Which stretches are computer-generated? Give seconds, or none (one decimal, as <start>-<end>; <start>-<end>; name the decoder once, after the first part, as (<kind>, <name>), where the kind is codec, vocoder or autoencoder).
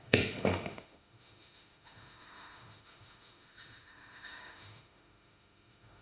0.0-6.0 (autoencoder, DAC-VAE)